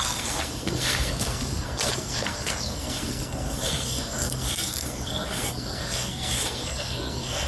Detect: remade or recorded remade